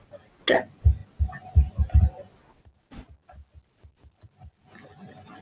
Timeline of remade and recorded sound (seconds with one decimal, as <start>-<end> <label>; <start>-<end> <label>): 0.0-5.4 recorded